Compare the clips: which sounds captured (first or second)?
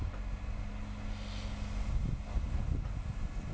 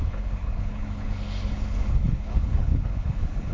first